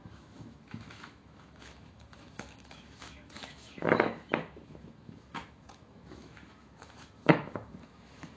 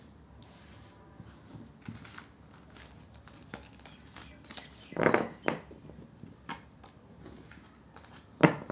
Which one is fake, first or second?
first